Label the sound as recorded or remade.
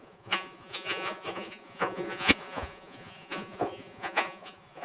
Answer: remade